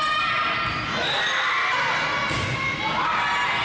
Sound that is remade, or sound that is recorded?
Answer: recorded